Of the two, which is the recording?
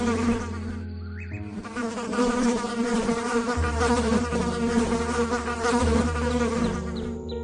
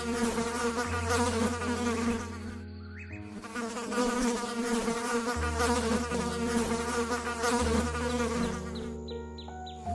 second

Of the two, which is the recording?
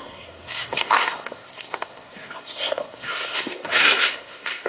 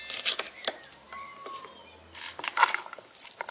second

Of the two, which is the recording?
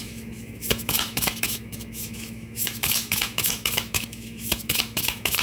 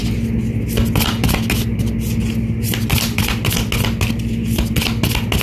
second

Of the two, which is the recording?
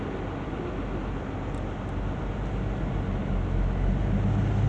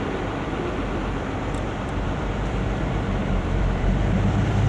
first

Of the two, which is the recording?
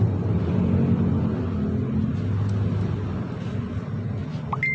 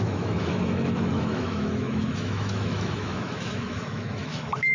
first